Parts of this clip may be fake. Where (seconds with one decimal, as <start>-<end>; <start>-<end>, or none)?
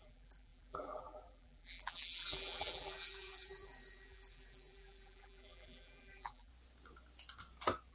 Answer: 0.0-6.5